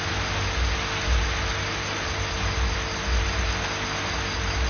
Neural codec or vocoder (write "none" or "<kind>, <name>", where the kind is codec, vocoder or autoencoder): none